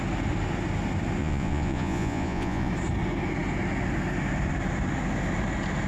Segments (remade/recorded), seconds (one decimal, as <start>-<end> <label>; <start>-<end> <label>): 0.0-1.2 recorded; 1.2-2.7 remade; 2.7-5.9 recorded